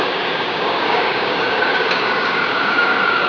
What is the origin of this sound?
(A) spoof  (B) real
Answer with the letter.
A